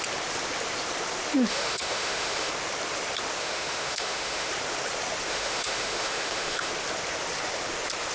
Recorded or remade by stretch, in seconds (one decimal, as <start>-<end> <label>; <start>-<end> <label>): 0.0-1.5 recorded; 1.5-2.5 remade; 2.5-3.4 recorded; 3.4-4.5 remade; 4.5-5.3 recorded; 5.3-6.7 remade; 6.7-8.1 recorded